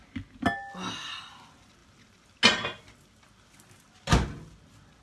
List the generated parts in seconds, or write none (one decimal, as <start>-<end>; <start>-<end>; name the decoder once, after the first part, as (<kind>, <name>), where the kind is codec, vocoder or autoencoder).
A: none